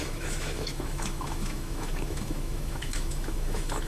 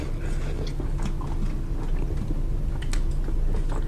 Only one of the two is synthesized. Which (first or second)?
first